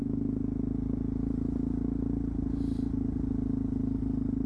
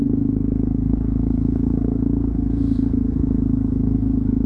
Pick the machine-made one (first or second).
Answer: second